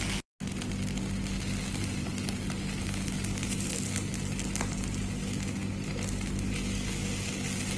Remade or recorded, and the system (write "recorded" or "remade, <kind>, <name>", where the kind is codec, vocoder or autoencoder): recorded